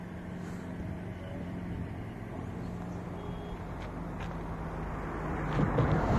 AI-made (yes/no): no